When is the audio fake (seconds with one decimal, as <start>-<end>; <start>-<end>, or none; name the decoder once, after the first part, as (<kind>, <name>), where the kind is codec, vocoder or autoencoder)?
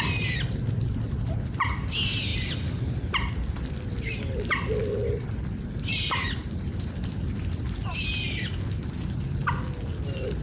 none